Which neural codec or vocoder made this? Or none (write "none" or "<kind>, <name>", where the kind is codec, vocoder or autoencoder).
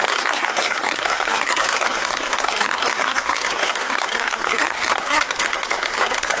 codec, SNAC